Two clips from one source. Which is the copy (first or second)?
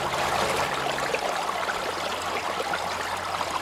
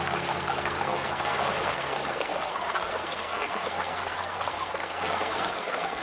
second